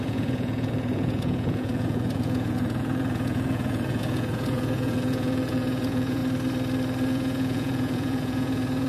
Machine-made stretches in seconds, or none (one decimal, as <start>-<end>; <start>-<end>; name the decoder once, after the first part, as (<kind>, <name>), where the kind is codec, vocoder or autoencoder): 0.0-6.2 (vocoder, Vocos); 7.1-8.9